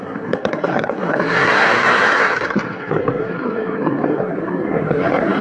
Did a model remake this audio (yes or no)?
yes